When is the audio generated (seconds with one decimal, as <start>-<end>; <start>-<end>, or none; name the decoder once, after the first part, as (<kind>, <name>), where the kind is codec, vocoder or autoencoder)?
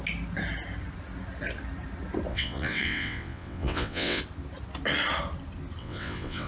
2.3-4.2 (vocoder, WaveNeXt); 5.8-6.5